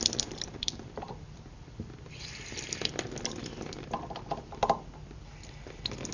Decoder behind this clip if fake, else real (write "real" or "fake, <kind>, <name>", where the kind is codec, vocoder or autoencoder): fake, vocoder, BigVGAN v2